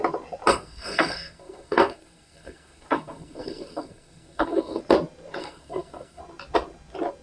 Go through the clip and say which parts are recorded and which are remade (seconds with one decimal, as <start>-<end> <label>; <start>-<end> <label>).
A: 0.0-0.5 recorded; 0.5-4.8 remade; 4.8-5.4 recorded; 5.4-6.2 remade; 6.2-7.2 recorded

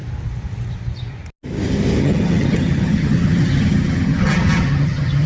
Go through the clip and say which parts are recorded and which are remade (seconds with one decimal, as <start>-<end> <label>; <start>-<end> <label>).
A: 0.0-2.0 recorded; 2.0-5.3 remade

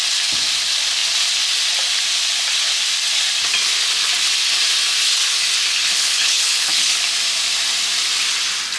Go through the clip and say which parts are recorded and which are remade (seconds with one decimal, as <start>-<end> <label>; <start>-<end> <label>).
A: 0.0-5.8 recorded; 5.8-7.0 remade; 7.0-8.8 recorded

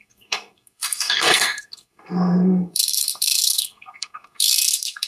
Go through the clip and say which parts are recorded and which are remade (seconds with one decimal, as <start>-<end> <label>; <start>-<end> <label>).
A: 0.0-5.1 remade

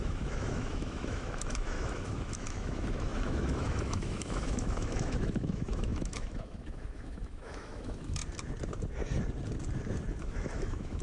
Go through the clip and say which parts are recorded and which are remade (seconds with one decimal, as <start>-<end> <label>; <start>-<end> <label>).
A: 0.0-8.2 remade; 8.2-10.2 recorded; 10.2-11.0 remade

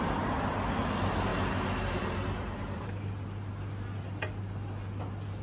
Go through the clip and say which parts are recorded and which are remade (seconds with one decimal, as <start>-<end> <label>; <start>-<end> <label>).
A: 0.0-5.4 recorded